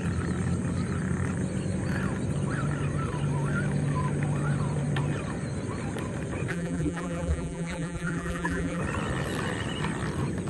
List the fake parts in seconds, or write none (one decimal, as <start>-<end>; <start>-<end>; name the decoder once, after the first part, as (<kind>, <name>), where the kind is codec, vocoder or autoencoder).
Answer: 6.5-8.8 (vocoder, BigVGAN v2)